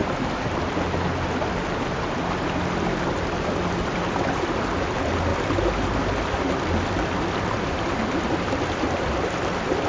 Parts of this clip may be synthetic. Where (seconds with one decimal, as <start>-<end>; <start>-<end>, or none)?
none